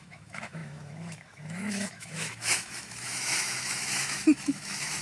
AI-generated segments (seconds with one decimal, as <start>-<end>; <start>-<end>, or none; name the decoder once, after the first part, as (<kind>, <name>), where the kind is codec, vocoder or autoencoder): 0.0-5.0 (autoencoder, DAC-VAE)